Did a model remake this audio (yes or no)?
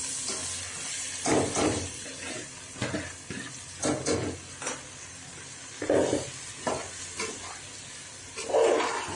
no